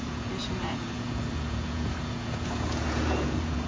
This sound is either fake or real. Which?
fake